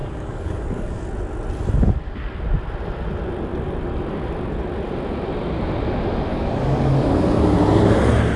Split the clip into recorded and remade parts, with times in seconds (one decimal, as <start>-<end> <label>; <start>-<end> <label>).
0.0-1.0 remade; 1.0-6.3 recorded; 6.3-7.2 remade; 7.2-8.4 recorded